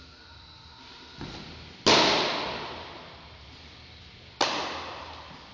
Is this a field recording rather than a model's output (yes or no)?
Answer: yes